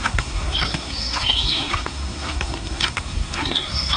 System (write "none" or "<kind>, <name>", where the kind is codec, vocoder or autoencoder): codec, SNAC